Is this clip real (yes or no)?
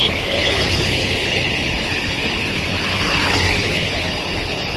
no